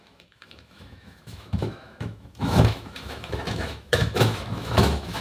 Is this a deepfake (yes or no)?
yes